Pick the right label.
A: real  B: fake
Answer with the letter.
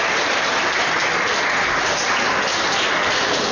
A